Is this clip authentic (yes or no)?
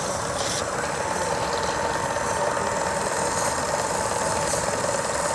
yes